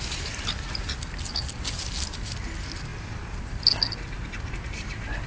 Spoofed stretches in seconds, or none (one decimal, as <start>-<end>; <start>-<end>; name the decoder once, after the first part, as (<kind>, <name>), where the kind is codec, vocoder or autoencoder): none